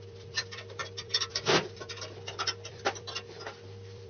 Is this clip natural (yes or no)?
no